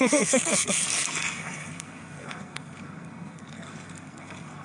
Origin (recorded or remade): remade